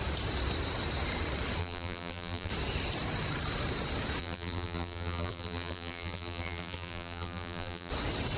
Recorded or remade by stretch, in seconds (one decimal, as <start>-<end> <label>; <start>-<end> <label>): 0.0-1.6 recorded; 1.6-2.5 remade; 2.5-4.2 recorded; 4.2-7.9 remade; 7.9-8.4 recorded